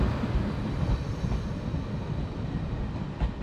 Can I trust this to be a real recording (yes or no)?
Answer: yes